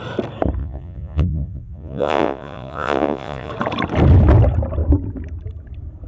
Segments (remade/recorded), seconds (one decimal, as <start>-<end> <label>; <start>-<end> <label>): 0.0-0.6 recorded; 0.6-3.5 remade; 3.5-6.1 recorded